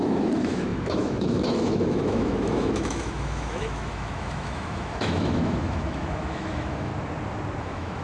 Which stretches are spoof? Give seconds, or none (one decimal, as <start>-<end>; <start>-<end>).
0.0-6.9; 7.6-8.0